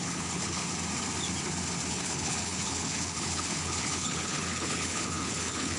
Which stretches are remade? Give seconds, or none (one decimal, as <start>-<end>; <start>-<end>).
0.0-0.6; 1.9-5.8